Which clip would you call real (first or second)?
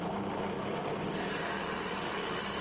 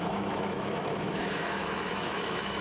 first